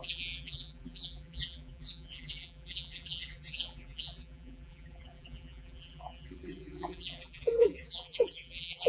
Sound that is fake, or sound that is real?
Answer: fake